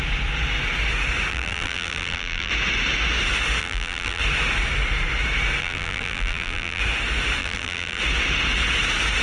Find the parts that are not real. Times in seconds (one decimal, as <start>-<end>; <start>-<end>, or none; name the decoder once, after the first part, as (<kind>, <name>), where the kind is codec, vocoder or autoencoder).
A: 1.3-2.5 (vocoder, BigVGAN v2); 3.6-4.2; 5.6-6.8; 7.4-8.0